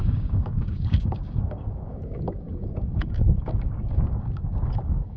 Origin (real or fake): fake